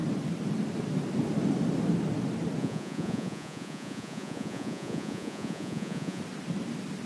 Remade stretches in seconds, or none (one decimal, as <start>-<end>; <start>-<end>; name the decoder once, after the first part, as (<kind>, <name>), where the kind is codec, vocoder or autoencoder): 2.6-6.2 (vocoder, Vocos)